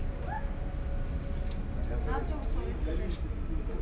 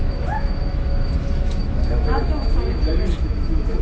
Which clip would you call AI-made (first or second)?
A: second